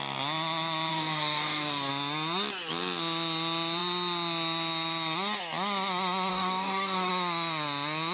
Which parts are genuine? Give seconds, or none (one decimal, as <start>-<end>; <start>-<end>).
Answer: 0.0-0.9; 1.9-6.3; 7.1-8.1